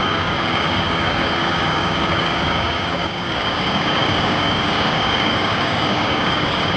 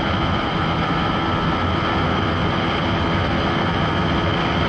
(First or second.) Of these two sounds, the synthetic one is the first